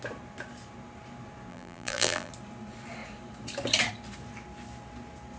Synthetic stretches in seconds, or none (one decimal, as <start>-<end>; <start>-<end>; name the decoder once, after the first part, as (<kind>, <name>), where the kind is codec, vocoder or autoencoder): 1.5-2.3 (vocoder, BigVGAN v2)